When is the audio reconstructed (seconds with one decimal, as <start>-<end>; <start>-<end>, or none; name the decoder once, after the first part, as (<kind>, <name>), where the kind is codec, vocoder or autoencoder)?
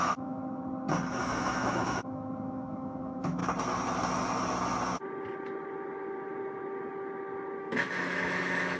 0.0-0.4 (autoencoder, DAC-VAE); 1.1-3.4; 7.6-8.8